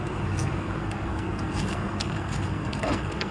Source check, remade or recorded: remade